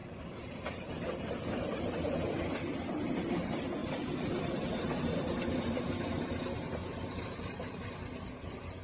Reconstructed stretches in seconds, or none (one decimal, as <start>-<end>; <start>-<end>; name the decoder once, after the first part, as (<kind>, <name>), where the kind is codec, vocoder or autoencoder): 0.0-3.8 (vocoder, BigVGAN v2); 4.5-6.8